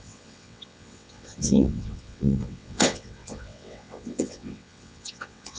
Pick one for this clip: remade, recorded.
remade